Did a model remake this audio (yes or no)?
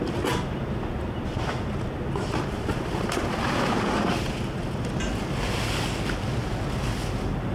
no